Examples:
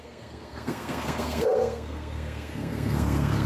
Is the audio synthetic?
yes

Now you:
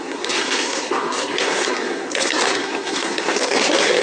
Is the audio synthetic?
yes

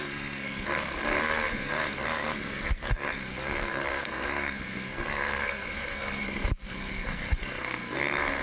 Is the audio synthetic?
yes